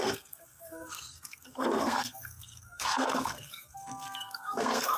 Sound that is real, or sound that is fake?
fake